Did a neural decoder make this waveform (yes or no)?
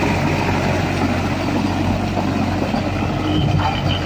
no